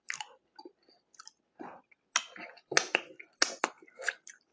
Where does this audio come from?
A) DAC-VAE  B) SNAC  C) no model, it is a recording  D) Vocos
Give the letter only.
C